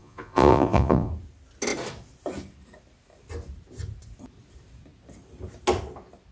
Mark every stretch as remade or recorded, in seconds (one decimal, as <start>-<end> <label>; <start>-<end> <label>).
0.0-1.1 remade; 1.1-6.3 recorded